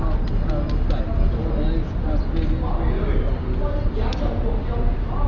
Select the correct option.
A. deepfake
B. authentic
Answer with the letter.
B